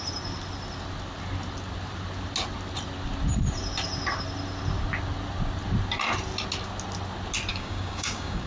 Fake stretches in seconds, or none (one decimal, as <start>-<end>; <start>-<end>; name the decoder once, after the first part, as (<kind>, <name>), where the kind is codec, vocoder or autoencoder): 7.5-8.5 (codec, DAC)